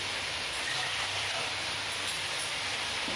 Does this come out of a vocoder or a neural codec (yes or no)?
yes